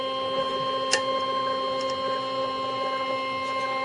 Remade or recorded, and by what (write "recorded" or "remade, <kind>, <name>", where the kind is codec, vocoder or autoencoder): recorded